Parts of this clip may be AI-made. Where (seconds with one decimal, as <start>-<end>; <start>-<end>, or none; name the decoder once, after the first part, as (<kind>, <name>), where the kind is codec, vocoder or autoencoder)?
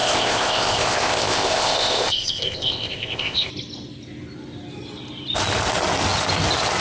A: 0.0-3.5 (codec, ZipCodec)